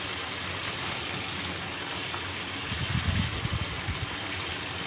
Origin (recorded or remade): recorded